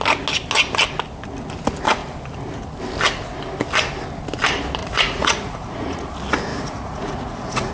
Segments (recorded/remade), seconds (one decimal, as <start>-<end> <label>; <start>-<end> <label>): 0.0-4.8 recorded; 4.8-6.1 remade; 6.1-6.5 recorded; 6.5-7.7 remade